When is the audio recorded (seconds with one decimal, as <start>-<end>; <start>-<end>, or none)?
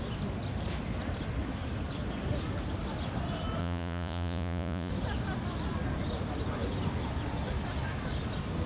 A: 0.0-3.6; 4.9-8.7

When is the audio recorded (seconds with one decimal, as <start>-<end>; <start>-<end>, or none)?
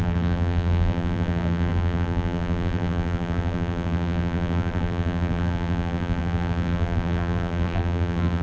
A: none